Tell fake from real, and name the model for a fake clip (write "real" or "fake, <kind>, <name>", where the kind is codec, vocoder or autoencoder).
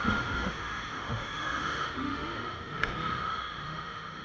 fake, autoencoder, DAC-VAE